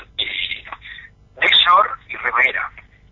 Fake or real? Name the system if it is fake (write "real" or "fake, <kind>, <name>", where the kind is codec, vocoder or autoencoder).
real